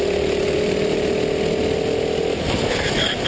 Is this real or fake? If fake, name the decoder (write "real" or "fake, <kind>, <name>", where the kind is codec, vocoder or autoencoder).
real